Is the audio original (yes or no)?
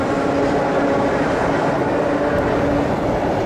yes